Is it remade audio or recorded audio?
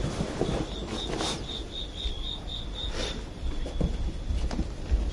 recorded